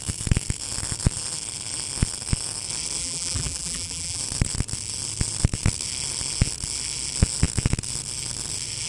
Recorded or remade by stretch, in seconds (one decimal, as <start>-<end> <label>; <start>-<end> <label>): 0.0-3.0 recorded; 3.0-4.2 remade; 4.2-8.9 recorded